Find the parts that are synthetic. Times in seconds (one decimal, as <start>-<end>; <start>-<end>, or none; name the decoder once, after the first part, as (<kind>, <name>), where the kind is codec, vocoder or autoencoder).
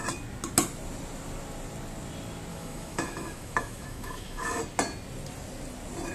2.5-4.6 (autoencoder, DAC-VAE)